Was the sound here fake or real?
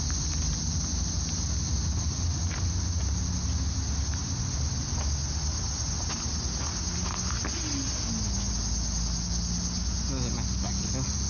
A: real